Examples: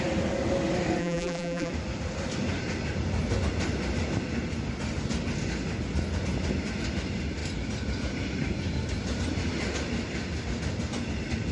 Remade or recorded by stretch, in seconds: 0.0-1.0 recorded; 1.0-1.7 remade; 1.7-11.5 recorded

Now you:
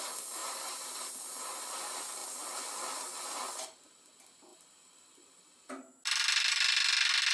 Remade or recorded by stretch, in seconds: 0.0-0.4 recorded; 0.4-1.1 remade; 1.1-7.3 recorded